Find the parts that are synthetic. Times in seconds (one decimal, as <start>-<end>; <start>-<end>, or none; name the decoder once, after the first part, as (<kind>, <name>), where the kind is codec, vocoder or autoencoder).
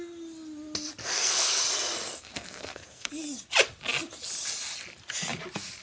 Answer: 1.0-1.6 (codec, SNAC); 2.1-3.1